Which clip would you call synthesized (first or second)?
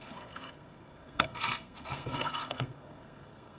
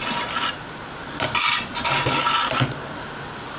first